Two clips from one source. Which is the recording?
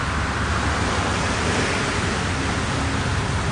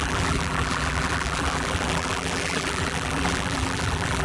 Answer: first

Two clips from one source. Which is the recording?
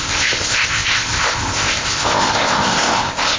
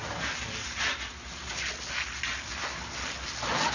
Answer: second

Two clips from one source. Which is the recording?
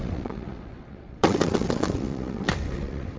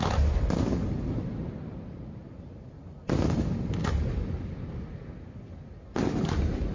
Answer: second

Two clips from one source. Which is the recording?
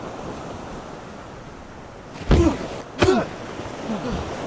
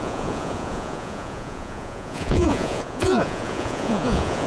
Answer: first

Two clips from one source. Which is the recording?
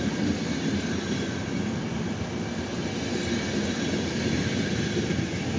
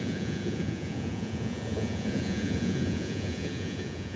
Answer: first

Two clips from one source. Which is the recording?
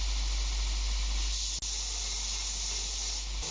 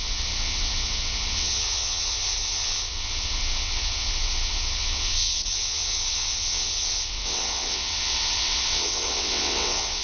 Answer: first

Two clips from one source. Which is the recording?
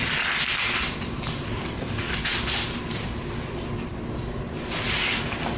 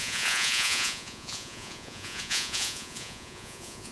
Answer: first